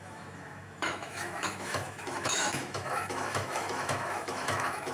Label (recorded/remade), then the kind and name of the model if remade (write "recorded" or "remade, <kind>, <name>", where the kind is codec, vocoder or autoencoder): remade, autoencoder, DAC-VAE